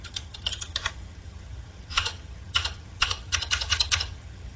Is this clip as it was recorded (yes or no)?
no